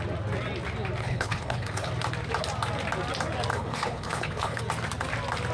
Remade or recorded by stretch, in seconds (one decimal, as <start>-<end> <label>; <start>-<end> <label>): 0.0-1.0 recorded; 1.0-1.9 remade; 1.9-3.5 recorded; 3.5-4.6 remade; 4.6-5.5 recorded